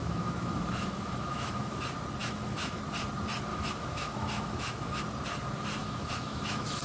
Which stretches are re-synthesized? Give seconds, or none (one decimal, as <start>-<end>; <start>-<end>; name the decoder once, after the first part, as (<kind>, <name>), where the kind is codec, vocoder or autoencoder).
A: 0.0-1.8 (autoencoder, DAC-VAE); 2.2-2.8; 3.5-5.0; 5.8-6.8